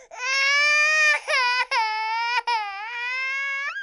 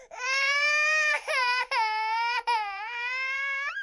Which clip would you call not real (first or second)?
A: second